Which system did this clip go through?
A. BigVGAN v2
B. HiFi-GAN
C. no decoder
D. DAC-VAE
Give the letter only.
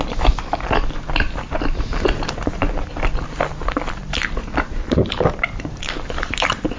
A